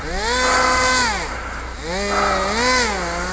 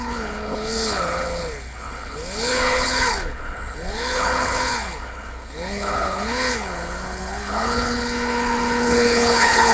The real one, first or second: first